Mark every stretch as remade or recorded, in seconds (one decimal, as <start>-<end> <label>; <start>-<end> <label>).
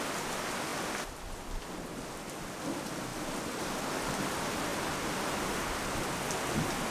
0.0-6.9 recorded